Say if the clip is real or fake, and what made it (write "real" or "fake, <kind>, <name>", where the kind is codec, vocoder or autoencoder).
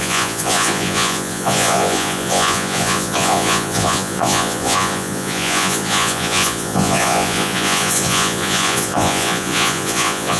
fake, vocoder, Vocos